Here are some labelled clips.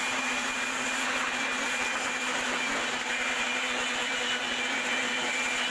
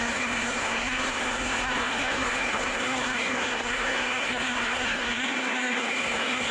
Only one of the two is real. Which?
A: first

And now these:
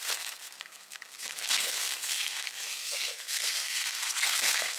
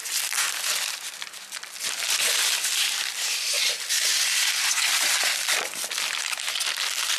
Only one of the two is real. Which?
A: second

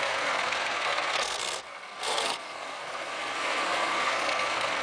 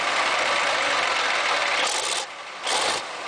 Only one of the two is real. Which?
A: second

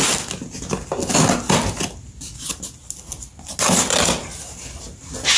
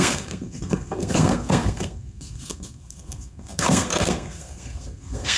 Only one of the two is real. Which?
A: first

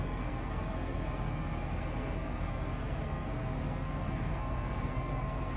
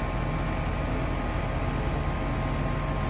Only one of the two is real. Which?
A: second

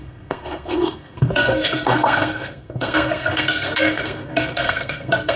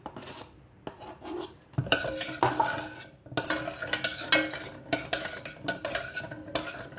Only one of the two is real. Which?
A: second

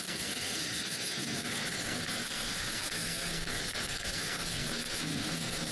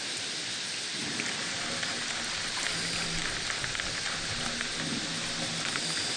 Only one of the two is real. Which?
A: second